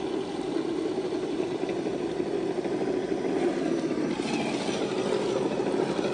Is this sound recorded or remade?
recorded